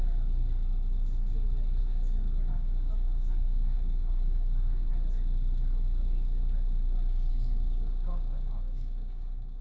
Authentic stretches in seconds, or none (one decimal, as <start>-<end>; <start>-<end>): 0.0-1.8; 4.9-7.3